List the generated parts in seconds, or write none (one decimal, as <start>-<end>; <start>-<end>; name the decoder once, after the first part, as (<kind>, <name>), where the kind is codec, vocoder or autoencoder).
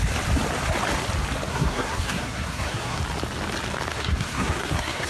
1.5-3.0 (codec, SNAC); 3.9-5.1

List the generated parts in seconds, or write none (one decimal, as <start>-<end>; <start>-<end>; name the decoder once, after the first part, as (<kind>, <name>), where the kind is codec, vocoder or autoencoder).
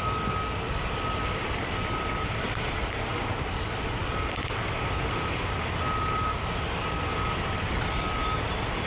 none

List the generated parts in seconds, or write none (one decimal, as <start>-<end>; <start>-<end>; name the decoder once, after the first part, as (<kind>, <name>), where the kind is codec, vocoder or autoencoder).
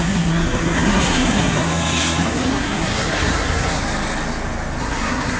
0.0-3.8 (codec, SNAC); 4.8-5.4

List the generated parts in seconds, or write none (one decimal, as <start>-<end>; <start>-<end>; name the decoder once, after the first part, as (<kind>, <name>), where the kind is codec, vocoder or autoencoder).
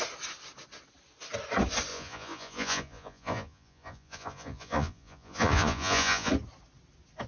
1.9-6.3 (vocoder, Vocos)